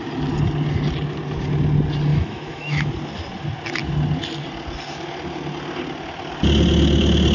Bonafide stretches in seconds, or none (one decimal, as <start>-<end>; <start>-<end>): 0.0-2.1; 2.9-7.3